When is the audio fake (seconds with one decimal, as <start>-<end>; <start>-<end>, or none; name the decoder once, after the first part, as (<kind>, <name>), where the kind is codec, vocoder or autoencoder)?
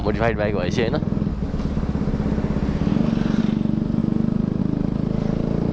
none